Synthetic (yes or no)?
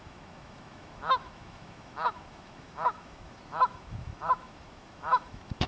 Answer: yes